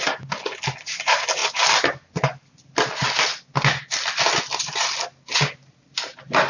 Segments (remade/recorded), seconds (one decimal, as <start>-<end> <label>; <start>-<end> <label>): 0.0-6.5 recorded